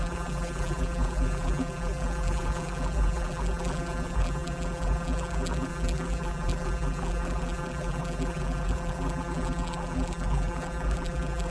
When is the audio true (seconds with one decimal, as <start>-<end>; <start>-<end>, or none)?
none